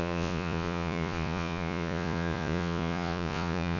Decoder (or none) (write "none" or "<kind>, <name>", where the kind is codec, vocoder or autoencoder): vocoder, Vocos